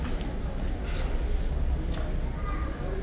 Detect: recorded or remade recorded